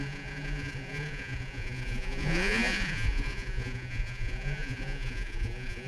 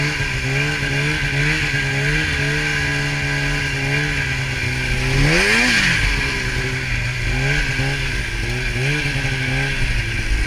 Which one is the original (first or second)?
second